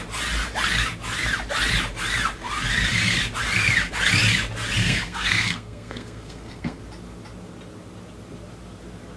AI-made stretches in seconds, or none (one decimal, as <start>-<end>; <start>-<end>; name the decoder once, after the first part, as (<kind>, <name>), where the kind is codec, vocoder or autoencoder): 4.8-6.8 (codec, SNAC)